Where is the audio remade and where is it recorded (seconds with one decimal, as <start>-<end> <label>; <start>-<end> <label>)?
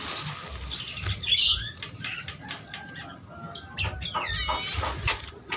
0.0-5.6 recorded